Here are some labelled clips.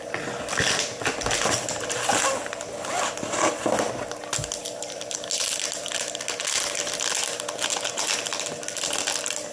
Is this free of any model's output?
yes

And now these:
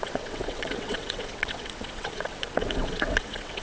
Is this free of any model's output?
no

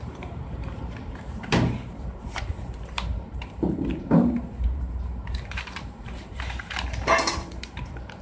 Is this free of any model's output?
no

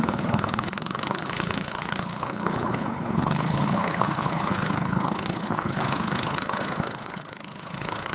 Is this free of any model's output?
no